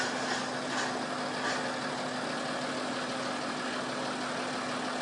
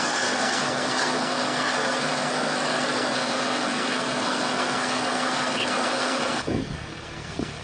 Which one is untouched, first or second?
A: first